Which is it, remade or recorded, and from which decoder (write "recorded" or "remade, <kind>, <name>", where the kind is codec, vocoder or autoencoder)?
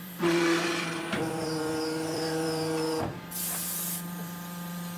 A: remade, vocoder, BigVGAN v2